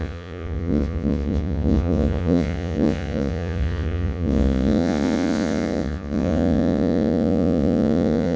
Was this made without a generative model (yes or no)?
no